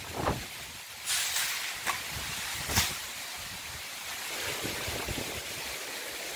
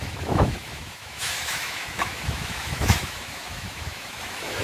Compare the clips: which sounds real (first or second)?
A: first